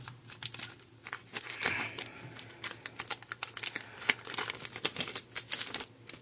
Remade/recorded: recorded